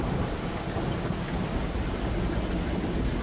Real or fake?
real